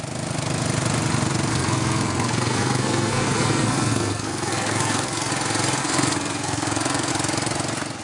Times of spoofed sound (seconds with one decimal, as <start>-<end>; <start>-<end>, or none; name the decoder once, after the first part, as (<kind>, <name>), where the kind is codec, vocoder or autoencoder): 1.5-5.3 (codec, SNAC); 5.8-7.1